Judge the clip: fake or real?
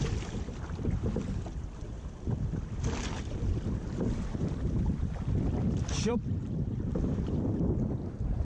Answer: fake